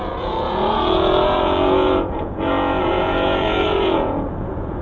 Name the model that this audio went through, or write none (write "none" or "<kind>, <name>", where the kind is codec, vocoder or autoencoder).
vocoder, Vocos